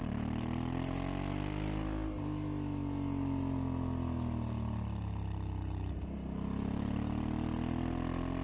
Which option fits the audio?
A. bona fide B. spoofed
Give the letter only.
A